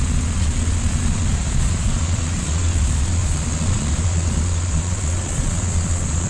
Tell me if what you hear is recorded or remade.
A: remade